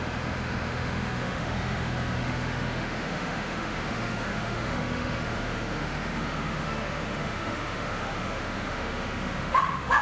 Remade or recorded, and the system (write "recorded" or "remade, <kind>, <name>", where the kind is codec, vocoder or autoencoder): remade, autoencoder, DAC-VAE